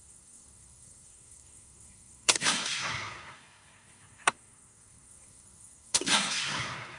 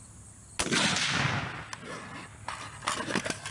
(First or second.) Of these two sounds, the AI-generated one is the first